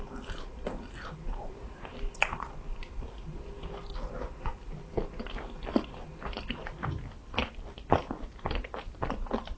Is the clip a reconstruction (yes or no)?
no